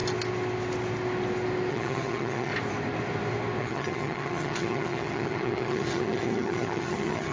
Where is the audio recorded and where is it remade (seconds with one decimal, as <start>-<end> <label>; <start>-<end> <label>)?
0.0-1.7 recorded; 1.7-2.5 remade; 2.5-3.6 recorded; 3.6-7.3 remade